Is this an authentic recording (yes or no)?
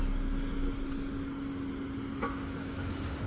yes